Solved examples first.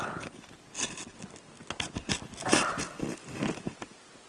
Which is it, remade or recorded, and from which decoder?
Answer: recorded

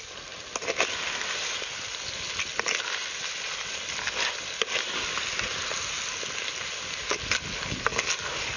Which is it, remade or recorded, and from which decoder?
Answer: recorded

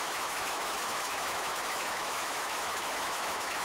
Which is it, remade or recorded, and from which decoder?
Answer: remade, autoencoder, DAC-VAE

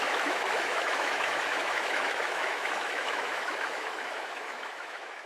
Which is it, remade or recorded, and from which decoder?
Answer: remade, autoencoder, DAC-VAE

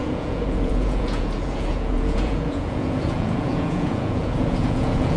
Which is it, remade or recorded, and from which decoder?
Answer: remade, vocoder, Vocos